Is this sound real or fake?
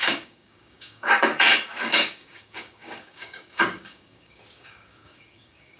fake